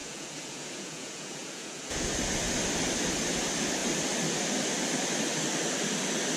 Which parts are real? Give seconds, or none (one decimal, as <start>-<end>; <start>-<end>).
2.0-6.4